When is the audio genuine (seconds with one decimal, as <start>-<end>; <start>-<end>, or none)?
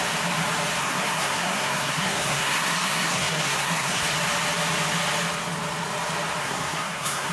0.0-0.8; 4.0-6.4